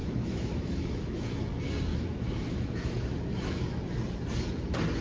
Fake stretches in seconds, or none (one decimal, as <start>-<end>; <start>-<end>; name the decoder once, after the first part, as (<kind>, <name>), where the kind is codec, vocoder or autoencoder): 0.0-1.3 (autoencoder, DAC-VAE); 1.9-3.8